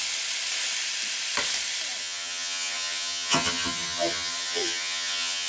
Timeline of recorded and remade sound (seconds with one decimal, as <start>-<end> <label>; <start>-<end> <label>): 0.0-2.0 recorded; 2.0-5.5 remade